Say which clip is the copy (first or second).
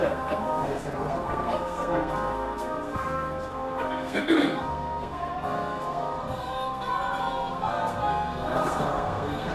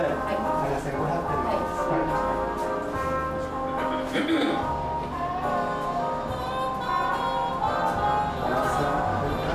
first